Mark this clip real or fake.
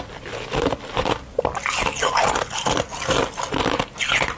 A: real